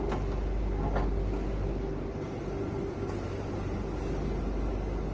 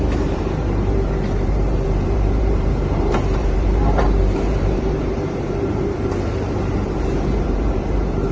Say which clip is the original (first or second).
first